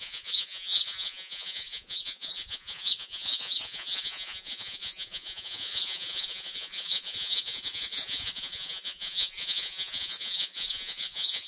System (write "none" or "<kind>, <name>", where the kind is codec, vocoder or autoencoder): vocoder, Vocos